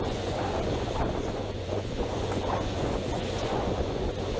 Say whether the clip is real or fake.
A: fake